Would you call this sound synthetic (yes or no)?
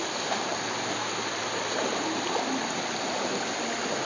no